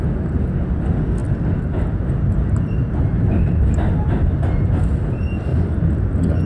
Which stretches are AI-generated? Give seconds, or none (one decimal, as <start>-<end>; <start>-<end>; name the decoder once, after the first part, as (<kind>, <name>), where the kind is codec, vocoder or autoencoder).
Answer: none